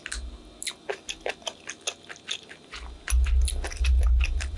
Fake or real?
real